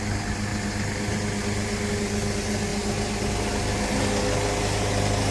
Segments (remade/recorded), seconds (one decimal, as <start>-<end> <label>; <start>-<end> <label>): 0.0-5.3 recorded